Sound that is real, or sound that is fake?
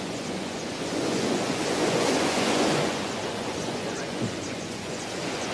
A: fake